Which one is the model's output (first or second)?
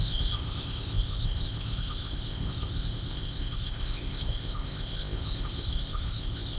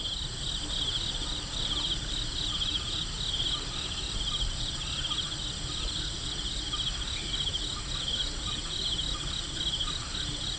first